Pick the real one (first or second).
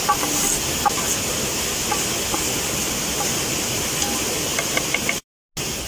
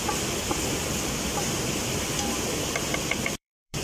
first